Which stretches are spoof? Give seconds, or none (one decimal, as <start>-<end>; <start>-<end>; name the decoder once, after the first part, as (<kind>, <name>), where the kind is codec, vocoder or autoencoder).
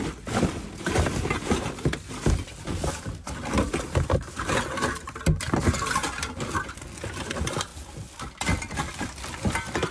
none